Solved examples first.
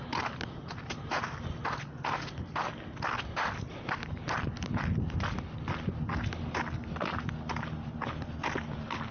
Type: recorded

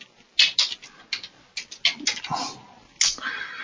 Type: recorded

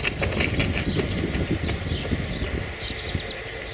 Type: recorded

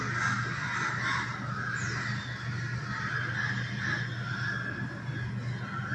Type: recorded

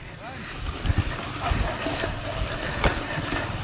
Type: recorded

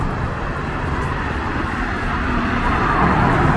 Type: recorded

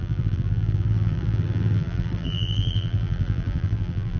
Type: remade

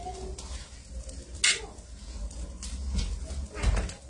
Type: recorded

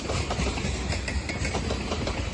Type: recorded